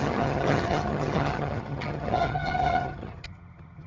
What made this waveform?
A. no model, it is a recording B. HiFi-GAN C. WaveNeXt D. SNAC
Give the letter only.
B